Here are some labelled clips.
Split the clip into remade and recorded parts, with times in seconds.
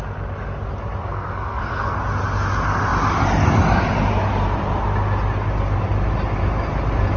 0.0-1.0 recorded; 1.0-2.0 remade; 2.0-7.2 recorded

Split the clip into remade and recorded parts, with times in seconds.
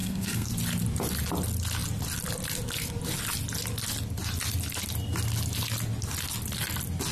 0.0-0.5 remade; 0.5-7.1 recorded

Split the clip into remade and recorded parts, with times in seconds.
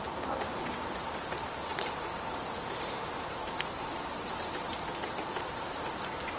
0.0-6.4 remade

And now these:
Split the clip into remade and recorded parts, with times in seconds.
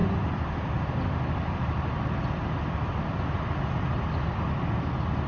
0.0-5.3 recorded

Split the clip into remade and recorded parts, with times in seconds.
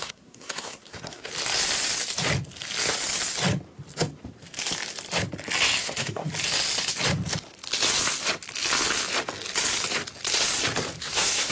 0.0-1.3 remade; 1.3-5.8 recorded; 5.8-6.3 remade; 6.3-11.0 recorded; 11.0-11.5 remade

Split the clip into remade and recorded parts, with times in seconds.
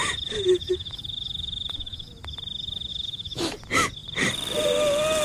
0.0-2.1 remade; 2.1-2.9 recorded; 2.9-3.5 remade; 3.5-5.2 recorded